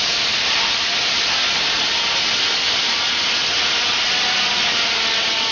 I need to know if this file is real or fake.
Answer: real